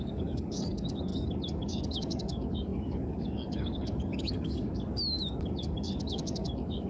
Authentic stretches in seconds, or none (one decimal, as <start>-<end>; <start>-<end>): none